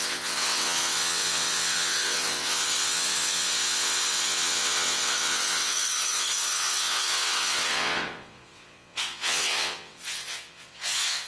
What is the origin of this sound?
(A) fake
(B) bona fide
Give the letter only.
A